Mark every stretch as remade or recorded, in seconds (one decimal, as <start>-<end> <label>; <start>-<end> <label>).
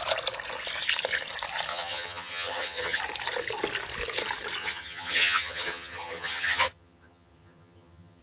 0.0-1.7 recorded; 1.7-3.0 remade; 3.0-4.6 recorded; 4.6-8.2 remade